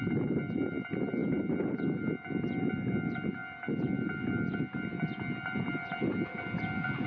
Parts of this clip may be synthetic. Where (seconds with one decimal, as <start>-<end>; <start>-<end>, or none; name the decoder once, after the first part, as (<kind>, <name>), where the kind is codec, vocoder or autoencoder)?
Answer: none